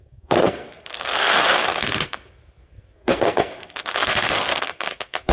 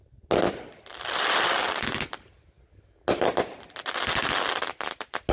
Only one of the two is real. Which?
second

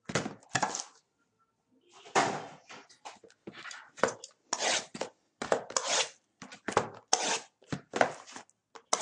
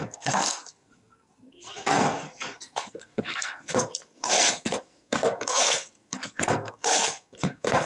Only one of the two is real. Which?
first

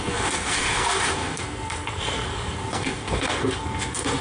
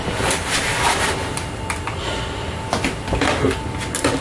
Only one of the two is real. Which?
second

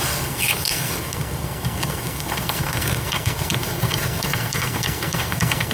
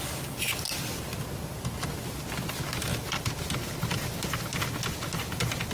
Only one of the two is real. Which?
second